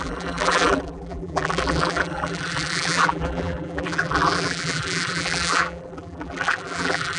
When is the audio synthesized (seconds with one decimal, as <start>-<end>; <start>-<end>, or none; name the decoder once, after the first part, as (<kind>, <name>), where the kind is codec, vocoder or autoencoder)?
0.0-7.2 (vocoder, BigVGAN v2)